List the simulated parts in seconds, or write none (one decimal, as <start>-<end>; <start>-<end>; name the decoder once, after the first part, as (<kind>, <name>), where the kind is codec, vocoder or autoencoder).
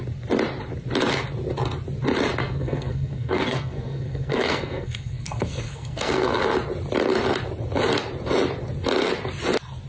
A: 2.4-6.4 (codec, SNAC)